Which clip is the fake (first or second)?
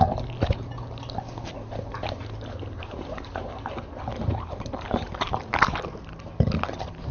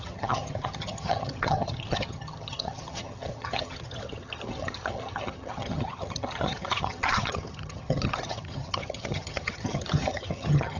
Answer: second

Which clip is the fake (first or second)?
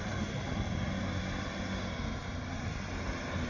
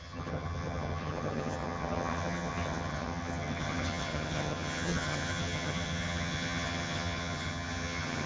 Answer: second